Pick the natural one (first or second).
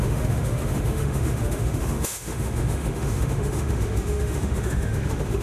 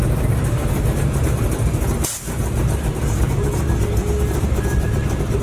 second